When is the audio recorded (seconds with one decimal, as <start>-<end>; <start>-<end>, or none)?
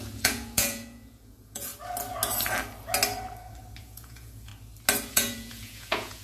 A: 1.7-3.8; 4.5-5.1